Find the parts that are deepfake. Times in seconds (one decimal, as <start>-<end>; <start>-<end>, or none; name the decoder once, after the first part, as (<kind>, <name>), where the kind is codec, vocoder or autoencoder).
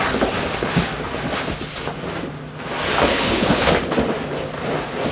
3.1-3.7 (codec, HILCodec)